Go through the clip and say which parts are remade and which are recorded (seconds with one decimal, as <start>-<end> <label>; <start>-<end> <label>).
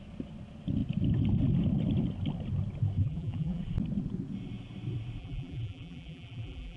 0.0-3.0 recorded; 3.0-3.6 remade; 3.6-5.2 recorded; 5.2-6.8 remade